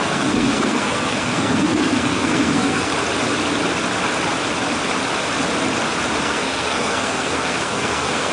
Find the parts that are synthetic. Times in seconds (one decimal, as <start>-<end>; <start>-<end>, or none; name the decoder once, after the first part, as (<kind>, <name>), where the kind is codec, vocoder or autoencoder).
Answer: 0.0-2.9 (codec, SNAC); 6.2-8.3